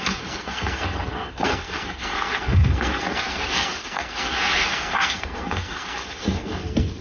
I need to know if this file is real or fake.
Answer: fake